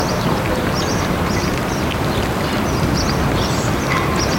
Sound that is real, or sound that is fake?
real